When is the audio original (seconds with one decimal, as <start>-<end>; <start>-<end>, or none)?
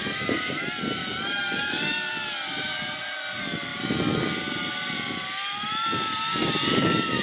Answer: 0.6-1.0; 2.1-7.2